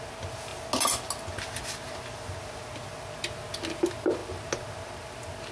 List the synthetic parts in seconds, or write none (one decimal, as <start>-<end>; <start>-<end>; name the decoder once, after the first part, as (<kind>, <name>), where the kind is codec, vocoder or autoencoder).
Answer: none